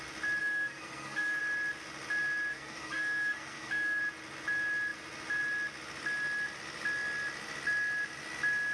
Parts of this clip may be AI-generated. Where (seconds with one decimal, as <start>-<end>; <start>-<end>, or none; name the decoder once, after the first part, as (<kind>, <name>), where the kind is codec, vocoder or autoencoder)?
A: 0.4-1.4 (codec, SNAC); 2.5-4.0